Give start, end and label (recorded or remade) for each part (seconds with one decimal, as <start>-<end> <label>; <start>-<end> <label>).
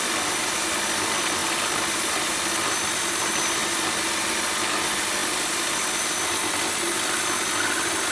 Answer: 0.0-8.1 recorded